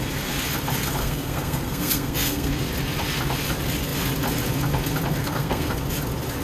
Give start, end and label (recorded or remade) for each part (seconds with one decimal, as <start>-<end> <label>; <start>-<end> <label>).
0.0-1.0 recorded; 1.0-2.5 remade; 2.5-5.2 recorded; 5.2-5.8 remade; 5.8-6.4 recorded